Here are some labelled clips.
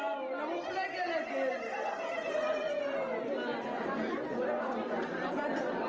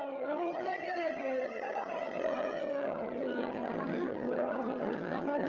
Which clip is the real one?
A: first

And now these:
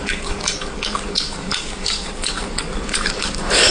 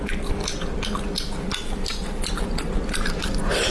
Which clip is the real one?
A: second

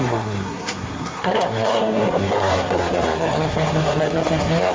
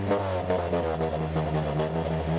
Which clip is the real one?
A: second